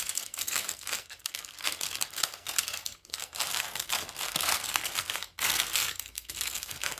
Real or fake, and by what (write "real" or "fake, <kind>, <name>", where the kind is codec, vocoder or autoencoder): fake, codec, SNAC